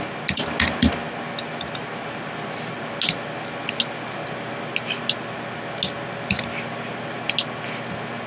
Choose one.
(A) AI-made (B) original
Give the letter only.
B